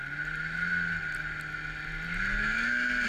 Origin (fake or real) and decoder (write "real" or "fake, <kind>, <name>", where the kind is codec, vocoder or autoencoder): real